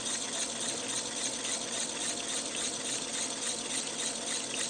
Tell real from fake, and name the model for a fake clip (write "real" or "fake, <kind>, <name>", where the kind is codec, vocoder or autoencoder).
real